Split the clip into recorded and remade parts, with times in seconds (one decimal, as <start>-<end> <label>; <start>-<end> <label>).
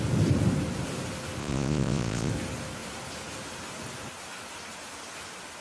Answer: 0.0-1.4 recorded; 1.4-2.3 remade; 2.3-5.6 recorded